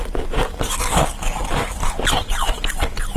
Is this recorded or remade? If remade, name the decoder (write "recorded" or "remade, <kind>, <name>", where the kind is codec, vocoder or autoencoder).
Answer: recorded